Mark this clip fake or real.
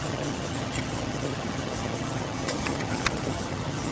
fake